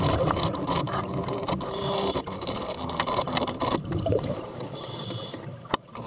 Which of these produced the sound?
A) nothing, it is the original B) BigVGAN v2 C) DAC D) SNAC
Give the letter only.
B